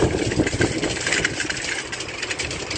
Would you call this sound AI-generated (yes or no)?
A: yes